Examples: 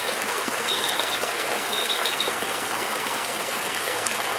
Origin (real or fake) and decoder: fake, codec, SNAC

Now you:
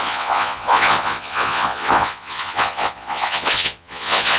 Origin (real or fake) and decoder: fake, vocoder, Vocos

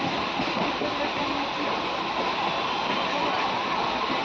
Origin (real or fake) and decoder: real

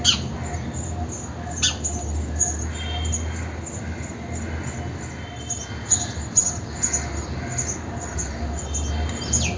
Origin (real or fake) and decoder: real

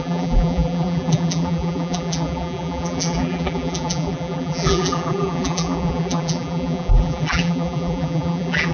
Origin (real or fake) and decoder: fake, vocoder, BigVGAN v2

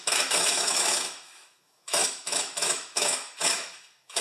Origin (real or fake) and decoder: fake, autoencoder, DAC-VAE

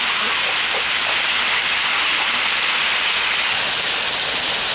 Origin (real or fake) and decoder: real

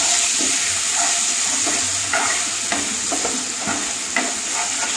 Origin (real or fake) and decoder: real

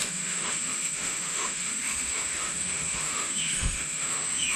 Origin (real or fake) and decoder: fake, autoencoder, DAC-VAE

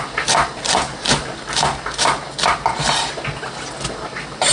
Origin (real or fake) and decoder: real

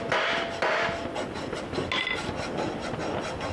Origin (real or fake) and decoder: real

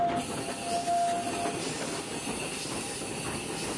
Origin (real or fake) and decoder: real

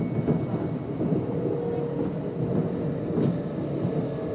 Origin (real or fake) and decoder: real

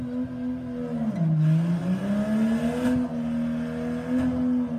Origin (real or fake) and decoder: real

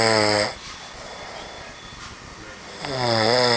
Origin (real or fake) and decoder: real